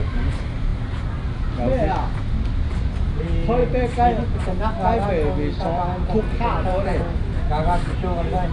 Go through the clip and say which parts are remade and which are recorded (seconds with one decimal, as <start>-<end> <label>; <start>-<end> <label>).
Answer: 0.0-8.5 recorded